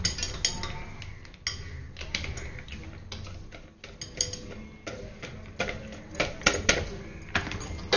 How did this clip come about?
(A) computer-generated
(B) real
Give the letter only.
B